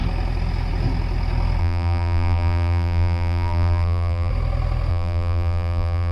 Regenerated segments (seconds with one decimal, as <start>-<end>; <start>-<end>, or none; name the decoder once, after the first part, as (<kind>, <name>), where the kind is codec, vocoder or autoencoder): 1.6-4.3 (vocoder, BigVGAN v2); 4.9-6.1